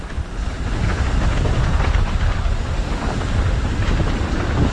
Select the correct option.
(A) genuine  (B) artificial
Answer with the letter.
A